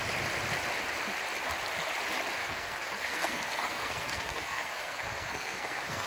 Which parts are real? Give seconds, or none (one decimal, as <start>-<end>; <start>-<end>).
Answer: 0.0-2.4